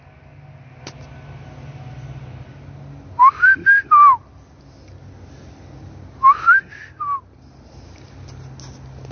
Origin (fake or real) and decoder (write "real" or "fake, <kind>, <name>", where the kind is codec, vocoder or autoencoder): real